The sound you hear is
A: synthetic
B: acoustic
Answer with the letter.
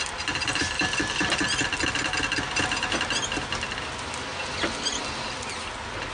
B